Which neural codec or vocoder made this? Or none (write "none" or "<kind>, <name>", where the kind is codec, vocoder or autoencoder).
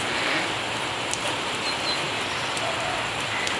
none